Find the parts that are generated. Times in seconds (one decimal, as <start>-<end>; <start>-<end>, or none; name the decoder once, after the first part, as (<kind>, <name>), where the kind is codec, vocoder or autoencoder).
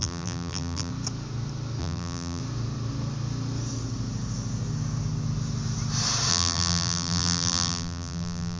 0.0-0.9 (vocoder, BigVGAN v2); 1.8-2.4; 6.3-8.6